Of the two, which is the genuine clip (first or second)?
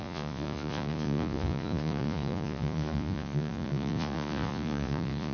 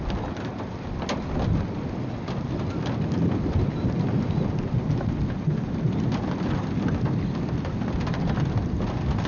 second